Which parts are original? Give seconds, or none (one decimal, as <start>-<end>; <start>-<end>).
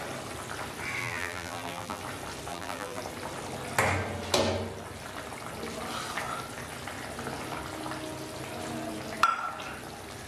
0.0-1.0; 2.0-2.5; 3.0-10.3